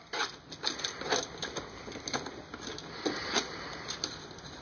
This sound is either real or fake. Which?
real